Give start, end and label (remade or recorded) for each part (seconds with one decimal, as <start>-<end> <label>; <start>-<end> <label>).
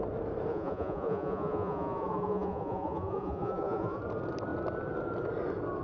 0.0-0.5 recorded; 0.5-4.0 remade; 4.0-5.8 recorded